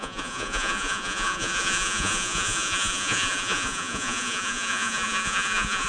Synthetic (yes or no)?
yes